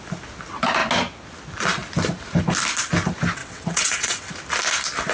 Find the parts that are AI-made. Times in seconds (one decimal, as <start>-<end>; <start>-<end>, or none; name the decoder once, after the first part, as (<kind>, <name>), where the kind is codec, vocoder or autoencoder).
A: 3.4-4.3 (vocoder, WaveNeXt)